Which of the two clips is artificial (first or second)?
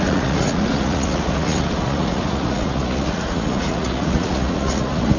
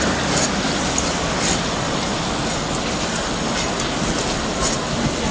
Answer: first